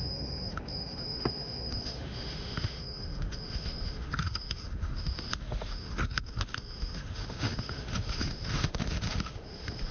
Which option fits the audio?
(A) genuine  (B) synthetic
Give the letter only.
B